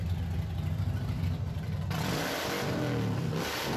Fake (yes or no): no